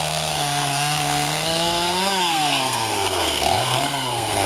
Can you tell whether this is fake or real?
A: fake